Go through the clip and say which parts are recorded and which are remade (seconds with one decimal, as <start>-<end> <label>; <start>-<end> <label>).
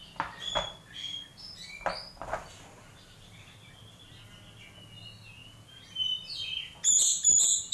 0.0-7.7 recorded